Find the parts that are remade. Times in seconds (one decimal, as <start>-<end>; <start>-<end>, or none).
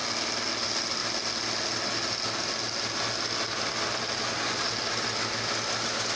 none